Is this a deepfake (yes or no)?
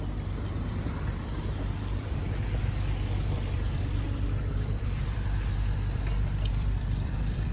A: yes